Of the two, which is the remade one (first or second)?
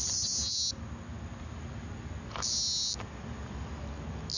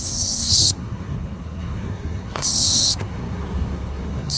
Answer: second